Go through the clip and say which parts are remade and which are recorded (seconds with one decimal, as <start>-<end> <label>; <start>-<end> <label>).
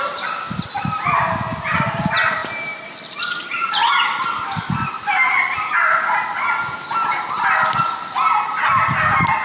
0.0-9.4 recorded